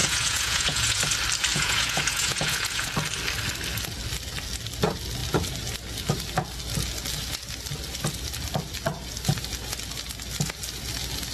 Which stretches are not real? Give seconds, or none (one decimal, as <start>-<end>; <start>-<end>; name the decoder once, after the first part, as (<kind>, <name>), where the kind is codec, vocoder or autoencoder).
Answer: 0.0-1.0 (vocoder, Vocos); 1.5-2.9